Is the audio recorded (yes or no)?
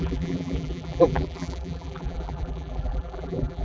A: no